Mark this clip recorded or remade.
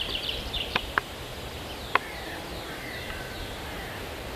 recorded